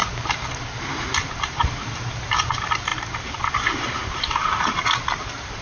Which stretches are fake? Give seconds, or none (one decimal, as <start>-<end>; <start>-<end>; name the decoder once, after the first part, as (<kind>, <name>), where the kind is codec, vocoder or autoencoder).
0.0-5.6 (vocoder, BigVGAN v2)